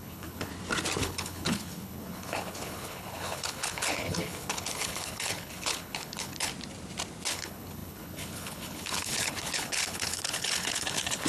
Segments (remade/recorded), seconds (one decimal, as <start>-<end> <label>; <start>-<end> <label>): 0.0-0.5 remade; 0.5-1.0 recorded; 1.0-6.5 remade; 6.5-7.3 recorded; 7.3-11.3 remade